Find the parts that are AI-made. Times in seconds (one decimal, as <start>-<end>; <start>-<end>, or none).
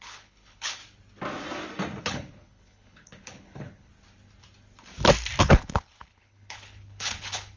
0.0-0.8; 2.0-3.9; 5.4-7.6